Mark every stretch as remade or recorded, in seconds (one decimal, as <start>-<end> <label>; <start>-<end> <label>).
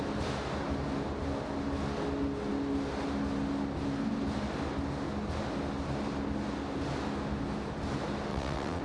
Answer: 0.0-8.3 recorded; 8.3-8.8 remade